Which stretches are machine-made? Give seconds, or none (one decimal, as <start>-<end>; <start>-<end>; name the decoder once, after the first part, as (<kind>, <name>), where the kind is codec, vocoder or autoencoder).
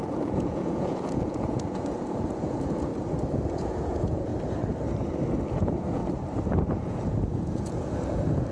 0.0-2.9 (vocoder, Vocos); 3.5-4.3; 5.4-6.0; 6.7-8.5